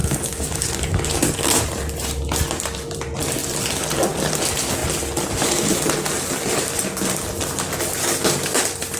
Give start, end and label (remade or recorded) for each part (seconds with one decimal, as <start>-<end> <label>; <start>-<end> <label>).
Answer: 0.0-1.6 remade; 1.6-8.0 recorded; 8.0-8.6 remade; 8.6-9.0 recorded